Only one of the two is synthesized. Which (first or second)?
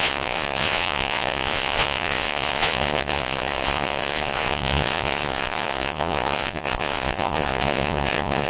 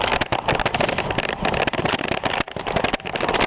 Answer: first